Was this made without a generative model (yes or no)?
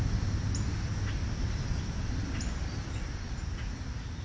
yes